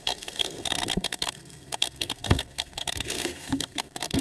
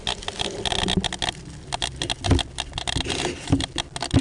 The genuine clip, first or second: second